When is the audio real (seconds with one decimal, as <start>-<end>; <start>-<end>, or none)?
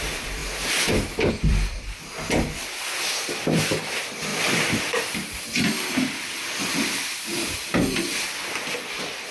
0.4-1.3; 7.3-7.9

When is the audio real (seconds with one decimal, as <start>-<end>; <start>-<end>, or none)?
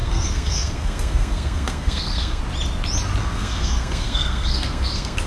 2.4-3.2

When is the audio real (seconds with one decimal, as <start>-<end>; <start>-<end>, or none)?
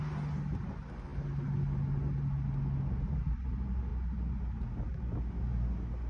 0.0-6.1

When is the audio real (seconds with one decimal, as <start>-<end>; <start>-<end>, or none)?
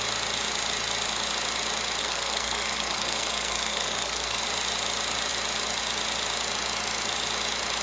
0.0-2.0; 4.4-7.8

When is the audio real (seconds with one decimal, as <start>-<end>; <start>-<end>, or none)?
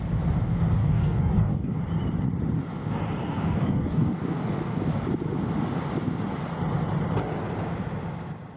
0.0-0.8; 1.8-3.2; 5.0-8.6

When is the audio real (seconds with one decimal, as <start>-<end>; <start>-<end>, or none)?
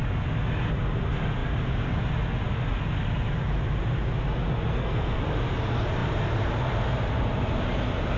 0.0-4.7; 5.2-8.2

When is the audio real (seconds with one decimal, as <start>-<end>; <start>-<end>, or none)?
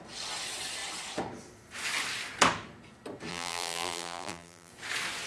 0.0-3.3; 4.7-5.3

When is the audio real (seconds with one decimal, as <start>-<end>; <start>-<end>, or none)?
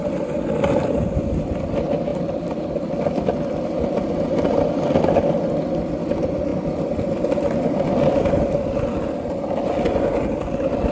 1.4-2.1; 3.2-6.5; 7.3-10.9